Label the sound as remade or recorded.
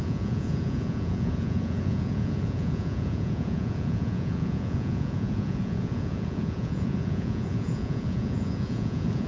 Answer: remade